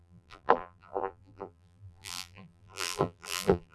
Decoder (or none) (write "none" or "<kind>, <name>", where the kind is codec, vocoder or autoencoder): vocoder, BigVGAN v2